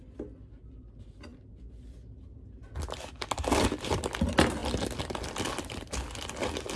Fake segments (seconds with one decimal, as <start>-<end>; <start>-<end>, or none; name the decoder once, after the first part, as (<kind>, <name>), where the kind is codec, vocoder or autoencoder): none